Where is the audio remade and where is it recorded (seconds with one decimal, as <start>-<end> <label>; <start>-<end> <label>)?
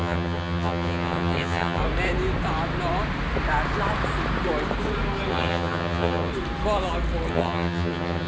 0.0-1.8 remade; 1.8-5.3 recorded; 5.3-6.3 remade; 6.3-7.3 recorded; 7.3-8.3 remade